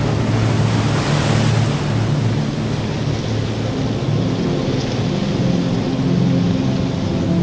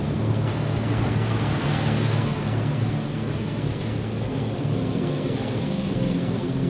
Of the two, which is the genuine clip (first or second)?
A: first